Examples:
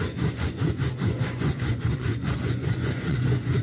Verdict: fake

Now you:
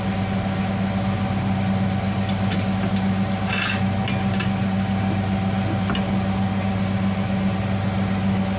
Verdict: real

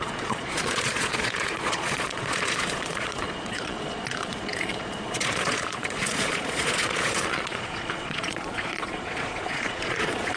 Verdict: fake